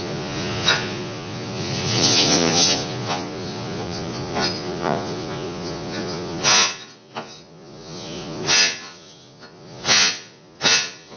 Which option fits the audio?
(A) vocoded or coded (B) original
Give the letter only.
A